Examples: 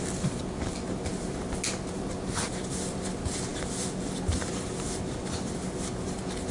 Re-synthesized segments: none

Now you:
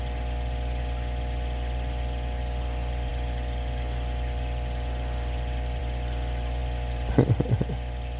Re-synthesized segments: none

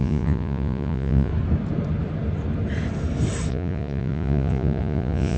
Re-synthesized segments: 0.0-1.3 (vocoder, Vocos); 3.5-5.4

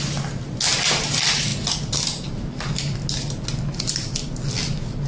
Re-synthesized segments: none

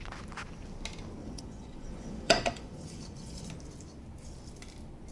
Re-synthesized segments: 1.2-3.5 (vocoder, Vocos)

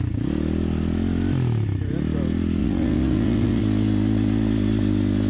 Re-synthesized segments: 2.6-3.6 (vocoder, Vocos)

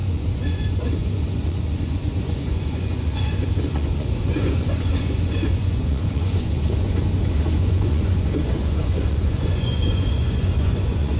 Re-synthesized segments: 0.0-11.2 (vocoder, Vocos)

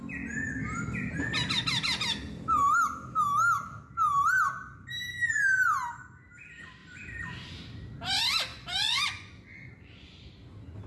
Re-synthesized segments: 8.5-10.2 (vocoder, Vocos)